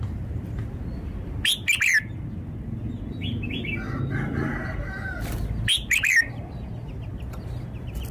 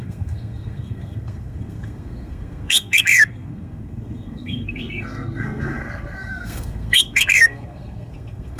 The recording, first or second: first